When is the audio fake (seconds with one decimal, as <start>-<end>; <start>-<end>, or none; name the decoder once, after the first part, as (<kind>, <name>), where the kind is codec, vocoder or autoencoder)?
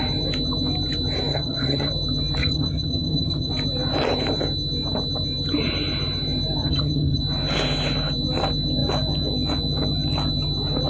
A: 1.3-1.9 (vocoder, HiFi-GAN); 2.4-3.5; 6.6-7.2